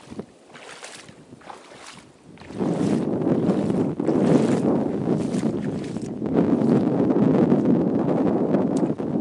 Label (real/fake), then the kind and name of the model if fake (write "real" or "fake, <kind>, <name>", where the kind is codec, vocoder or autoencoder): real